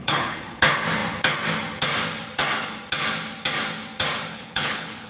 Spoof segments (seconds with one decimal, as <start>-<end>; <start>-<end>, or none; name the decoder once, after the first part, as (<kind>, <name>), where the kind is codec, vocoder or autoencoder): 0.0-0.6 (codec, HILCodec); 4.3-5.1